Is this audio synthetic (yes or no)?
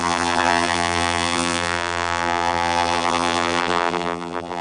yes